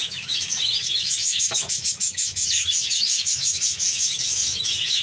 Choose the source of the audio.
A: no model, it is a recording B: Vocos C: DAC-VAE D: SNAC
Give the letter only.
C